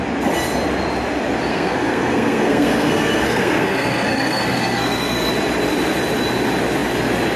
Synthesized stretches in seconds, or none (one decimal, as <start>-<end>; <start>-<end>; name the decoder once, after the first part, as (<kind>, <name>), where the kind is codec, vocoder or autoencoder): 1.5-5.3 (codec, SNAC)